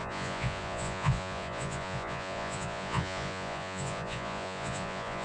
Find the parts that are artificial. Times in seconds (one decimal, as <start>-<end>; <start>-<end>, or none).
0.0-5.2